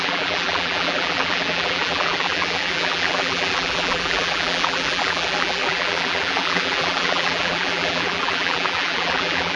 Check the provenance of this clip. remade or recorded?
remade